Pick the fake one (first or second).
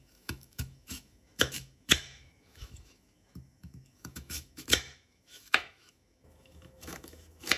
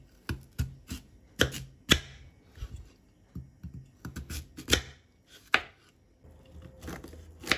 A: first